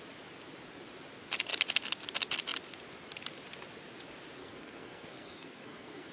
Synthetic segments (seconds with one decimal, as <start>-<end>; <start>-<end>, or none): 4.4-6.1